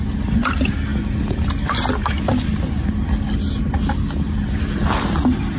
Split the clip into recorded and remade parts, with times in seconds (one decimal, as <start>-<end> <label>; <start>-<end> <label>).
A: 0.0-5.6 recorded